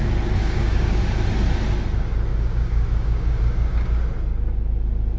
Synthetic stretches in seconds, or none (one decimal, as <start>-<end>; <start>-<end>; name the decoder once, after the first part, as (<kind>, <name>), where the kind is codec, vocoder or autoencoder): 0.4-1.0 (codec, DAC); 2.3-4.0